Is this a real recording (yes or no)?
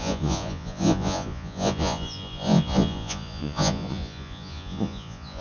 no